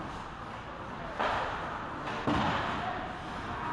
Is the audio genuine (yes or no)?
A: yes